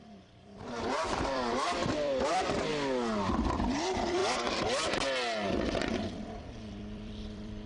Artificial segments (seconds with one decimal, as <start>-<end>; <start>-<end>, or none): 0.0-2.7; 3.4-4.2; 5.8-7.7